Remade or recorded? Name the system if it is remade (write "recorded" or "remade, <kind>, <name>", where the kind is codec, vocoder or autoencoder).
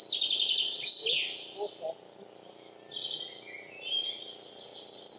recorded